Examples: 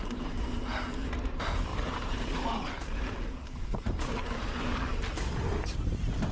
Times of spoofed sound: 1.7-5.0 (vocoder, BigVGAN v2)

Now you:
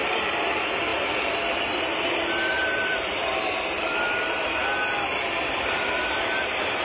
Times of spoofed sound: 0.0-4.6 (vocoder, BigVGAN v2); 5.2-6.8

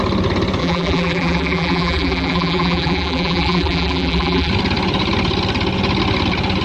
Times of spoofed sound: 0.6-4.5 (vocoder, BigVGAN v2)